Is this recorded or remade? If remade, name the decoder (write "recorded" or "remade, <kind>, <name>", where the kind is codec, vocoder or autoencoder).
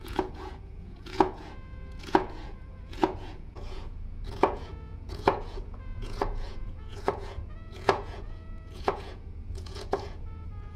remade, vocoder, Vocos